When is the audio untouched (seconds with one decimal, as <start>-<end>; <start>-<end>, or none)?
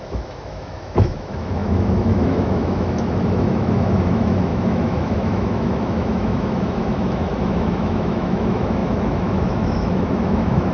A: none